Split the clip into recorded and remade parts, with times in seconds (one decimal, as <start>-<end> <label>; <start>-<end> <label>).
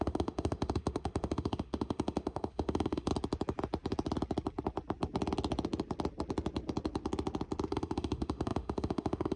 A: 0.0-3.1 remade; 3.1-7.7 recorded; 7.7-9.4 remade